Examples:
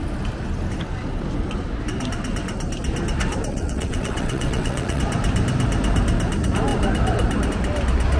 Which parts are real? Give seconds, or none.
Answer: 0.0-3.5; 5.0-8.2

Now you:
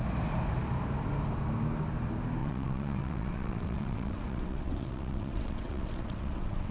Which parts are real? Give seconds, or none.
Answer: 0.0-2.4

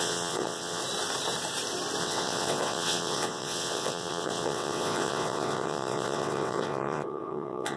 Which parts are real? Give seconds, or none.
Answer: 0.8-2.0